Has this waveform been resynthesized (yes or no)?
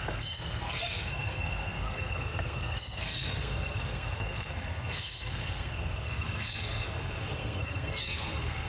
yes